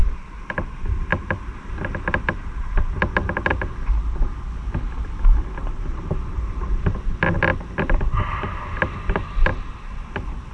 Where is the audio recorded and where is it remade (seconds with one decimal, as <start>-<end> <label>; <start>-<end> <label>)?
0.0-10.5 recorded

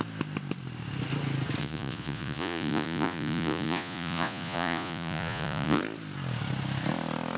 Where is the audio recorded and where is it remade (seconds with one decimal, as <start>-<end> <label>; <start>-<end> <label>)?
0.0-1.6 recorded; 1.6-5.8 remade; 5.8-7.4 recorded

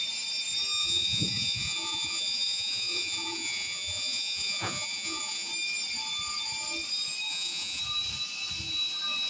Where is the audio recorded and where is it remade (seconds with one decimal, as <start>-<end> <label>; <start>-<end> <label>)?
0.0-0.8 recorded; 0.8-5.5 remade; 5.5-7.3 recorded; 7.3-7.8 remade; 7.8-9.3 recorded

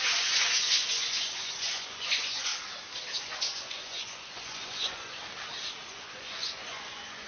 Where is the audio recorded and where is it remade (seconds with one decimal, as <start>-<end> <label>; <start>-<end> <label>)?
0.0-2.5 remade; 2.5-3.2 recorded; 3.2-5.2 remade; 5.2-5.9 recorded; 5.9-7.3 remade

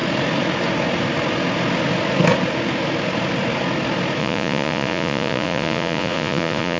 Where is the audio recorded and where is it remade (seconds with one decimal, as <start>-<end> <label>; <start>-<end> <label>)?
0.0-4.2 recorded; 4.2-6.8 remade

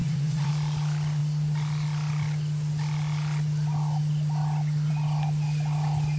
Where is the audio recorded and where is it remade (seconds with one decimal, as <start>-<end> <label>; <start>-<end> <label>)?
0.0-0.5 remade; 0.5-6.2 recorded

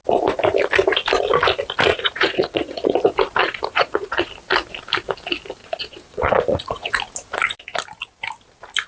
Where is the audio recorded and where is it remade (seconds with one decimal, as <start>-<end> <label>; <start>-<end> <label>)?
0.0-1.9 recorded; 1.9-2.9 remade; 2.9-3.4 recorded; 3.4-4.3 remade; 4.3-5.6 recorded; 5.6-6.9 remade; 6.9-8.9 recorded